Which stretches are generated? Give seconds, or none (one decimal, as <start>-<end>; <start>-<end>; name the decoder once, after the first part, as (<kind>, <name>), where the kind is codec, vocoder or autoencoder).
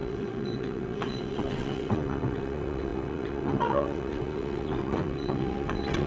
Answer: 0.0-6.1 (vocoder, WaveNeXt)